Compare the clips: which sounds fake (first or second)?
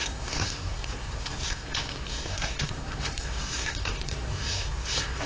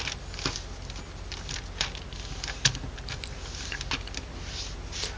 first